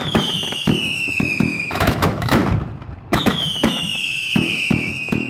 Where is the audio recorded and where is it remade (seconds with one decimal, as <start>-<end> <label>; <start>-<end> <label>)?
0.0-2.4 remade; 2.4-3.1 recorded; 3.1-5.3 remade